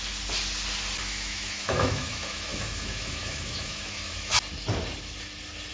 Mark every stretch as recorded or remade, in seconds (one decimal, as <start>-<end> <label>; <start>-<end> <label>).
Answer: 0.0-1.0 recorded; 1.0-4.3 remade; 4.3-5.7 recorded